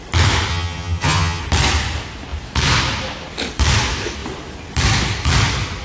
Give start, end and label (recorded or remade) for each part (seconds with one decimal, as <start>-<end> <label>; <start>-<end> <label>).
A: 0.0-0.5 recorded; 0.5-1.4 remade; 1.4-5.8 recorded